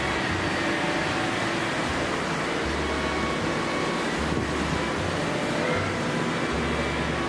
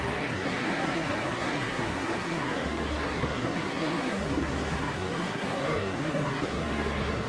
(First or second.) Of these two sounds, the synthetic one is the second